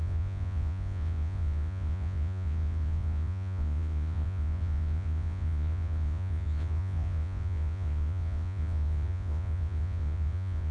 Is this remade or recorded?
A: remade